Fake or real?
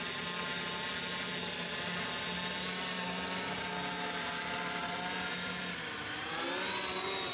fake